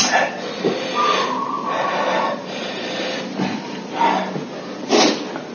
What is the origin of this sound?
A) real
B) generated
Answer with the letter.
A